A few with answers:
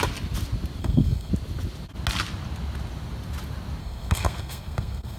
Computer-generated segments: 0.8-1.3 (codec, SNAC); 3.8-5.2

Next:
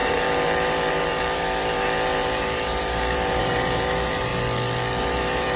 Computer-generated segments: 0.0-4.3 (vocoder, BigVGAN v2); 5.0-5.6

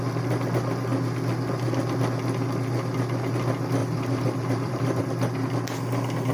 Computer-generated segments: 3.8-5.0 (vocoder, BigVGAN v2)

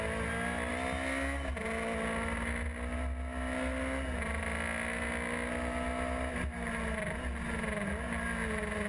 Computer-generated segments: none